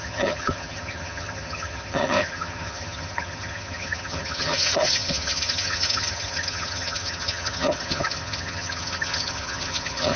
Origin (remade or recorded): remade